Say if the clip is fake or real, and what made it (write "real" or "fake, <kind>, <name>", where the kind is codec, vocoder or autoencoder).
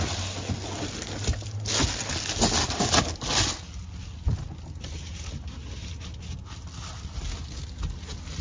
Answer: real